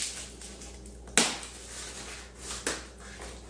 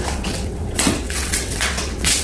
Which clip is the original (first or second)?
first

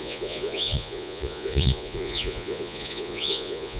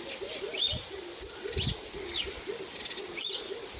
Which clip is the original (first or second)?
second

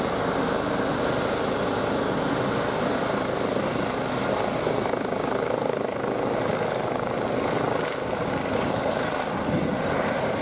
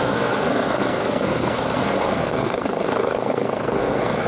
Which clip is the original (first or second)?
first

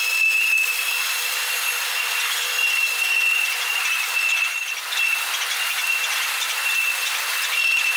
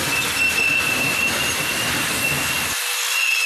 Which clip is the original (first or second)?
second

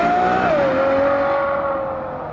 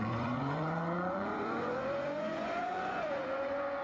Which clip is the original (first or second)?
first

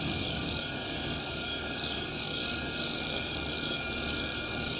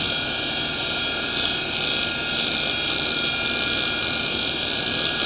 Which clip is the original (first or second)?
second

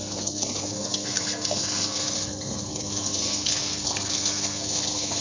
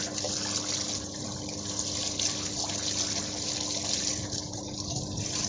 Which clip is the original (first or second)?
second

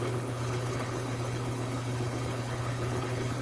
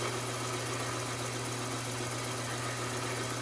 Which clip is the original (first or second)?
second